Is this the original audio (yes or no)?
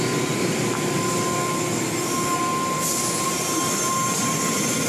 yes